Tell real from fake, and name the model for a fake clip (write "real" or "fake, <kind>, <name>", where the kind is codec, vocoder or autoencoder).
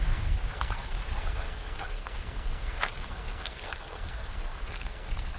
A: fake, codec, SNAC